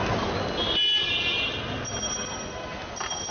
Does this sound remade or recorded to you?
recorded